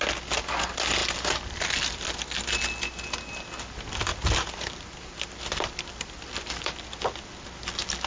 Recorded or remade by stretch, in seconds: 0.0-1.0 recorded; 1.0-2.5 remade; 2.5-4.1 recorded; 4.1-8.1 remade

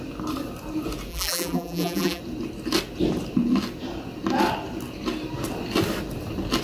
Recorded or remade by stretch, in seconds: 0.0-1.1 recorded; 1.1-2.2 remade; 2.2-6.6 recorded

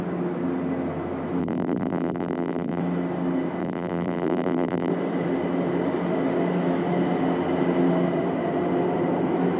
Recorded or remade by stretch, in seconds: 0.0-1.4 recorded; 1.4-2.8 remade; 2.8-3.6 recorded; 3.6-4.9 remade; 4.9-9.6 recorded

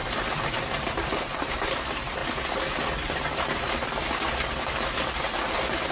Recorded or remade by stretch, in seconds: 0.0-0.7 recorded; 0.7-2.2 remade; 2.2-5.9 recorded

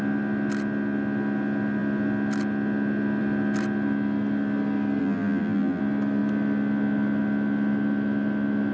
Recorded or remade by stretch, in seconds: 0.0-5.0 recorded; 5.0-5.8 remade; 5.8-8.7 recorded